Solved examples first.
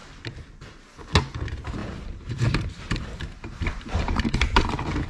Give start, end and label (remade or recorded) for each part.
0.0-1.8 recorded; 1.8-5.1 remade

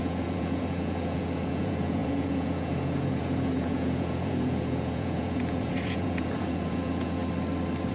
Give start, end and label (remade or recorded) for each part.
0.0-7.2 remade; 7.2-7.9 recorded

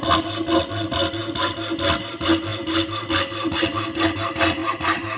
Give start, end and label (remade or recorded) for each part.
0.0-5.2 recorded

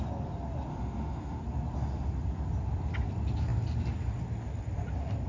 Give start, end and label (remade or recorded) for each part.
0.0-0.7 recorded; 0.7-1.4 remade; 1.4-5.3 recorded

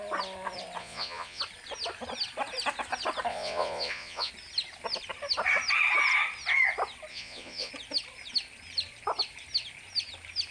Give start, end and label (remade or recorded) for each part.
0.0-0.8 recorded; 0.8-1.4 remade; 1.4-3.3 recorded; 3.3-4.3 remade; 4.3-7.1 recorded; 7.1-7.7 remade; 7.7-10.5 recorded

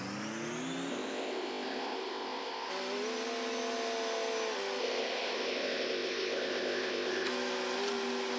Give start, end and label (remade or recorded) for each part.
0.0-0.9 recorded; 0.9-2.7 remade; 2.7-4.8 recorded; 4.8-7.3 remade; 7.3-8.4 recorded

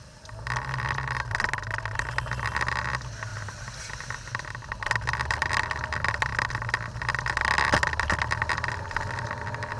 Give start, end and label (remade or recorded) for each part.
0.0-9.8 recorded